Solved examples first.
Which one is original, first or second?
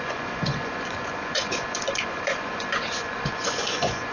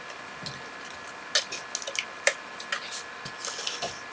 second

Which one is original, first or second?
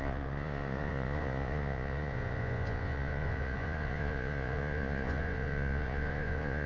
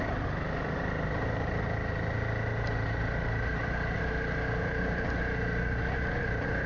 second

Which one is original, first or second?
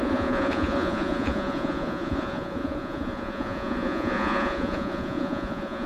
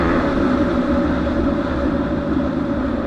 second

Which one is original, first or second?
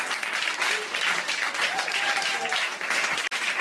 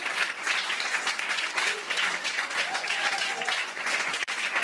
first